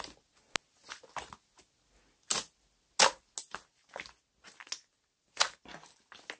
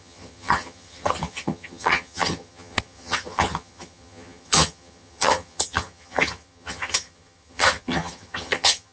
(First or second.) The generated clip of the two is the second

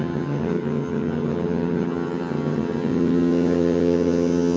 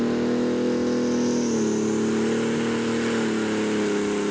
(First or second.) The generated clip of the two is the first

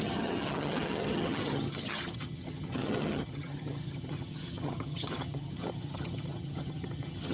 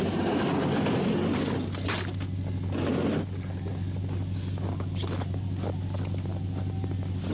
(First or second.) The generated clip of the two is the first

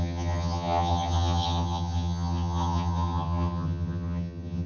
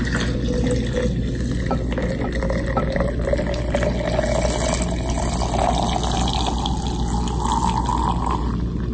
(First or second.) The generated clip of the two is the first